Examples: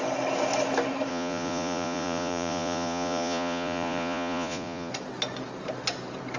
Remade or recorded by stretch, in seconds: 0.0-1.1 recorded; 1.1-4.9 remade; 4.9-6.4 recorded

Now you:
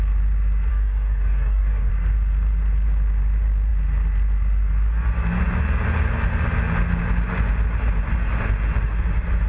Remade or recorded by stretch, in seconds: 0.0-0.7 recorded; 0.7-1.9 remade; 1.9-9.5 recorded

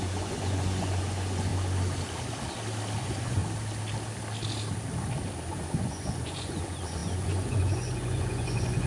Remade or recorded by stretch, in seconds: 0.0-1.5 remade; 1.5-3.0 recorded; 3.0-3.4 remade; 3.4-5.5 recorded; 5.5-8.9 remade

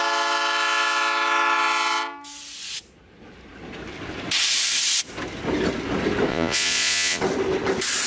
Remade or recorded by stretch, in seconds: 0.0-6.3 recorded; 6.3-7.2 remade; 7.2-8.1 recorded

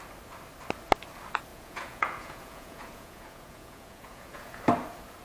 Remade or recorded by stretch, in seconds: 0.0-1.5 recorded; 1.5-4.6 remade; 4.6-5.2 recorded

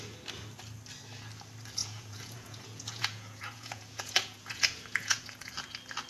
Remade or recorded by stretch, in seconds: 0.0-1.8 recorded; 1.8-5.5 remade; 5.5-6.1 recorded